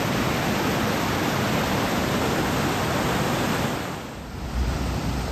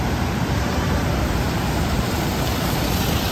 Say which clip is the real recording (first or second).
first